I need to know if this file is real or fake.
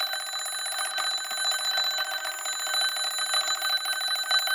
real